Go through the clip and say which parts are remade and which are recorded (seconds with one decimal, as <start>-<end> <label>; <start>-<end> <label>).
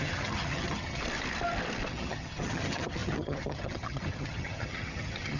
0.0-1.0 remade; 1.0-1.9 recorded; 1.9-5.4 remade